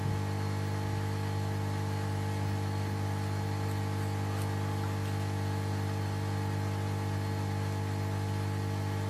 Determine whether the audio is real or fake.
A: real